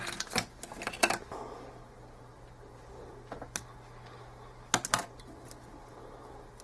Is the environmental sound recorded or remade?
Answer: recorded